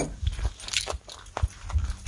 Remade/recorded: recorded